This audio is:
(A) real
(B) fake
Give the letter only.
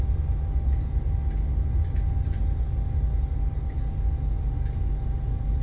A